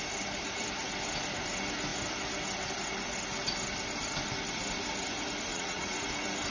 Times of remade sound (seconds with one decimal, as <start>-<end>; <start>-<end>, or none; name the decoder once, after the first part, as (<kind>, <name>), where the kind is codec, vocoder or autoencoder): 5.5-6.1 (vocoder, Vocos)